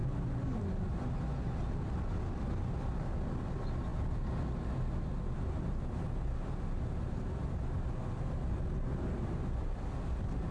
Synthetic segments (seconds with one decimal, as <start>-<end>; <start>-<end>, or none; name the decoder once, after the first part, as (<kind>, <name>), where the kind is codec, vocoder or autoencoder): none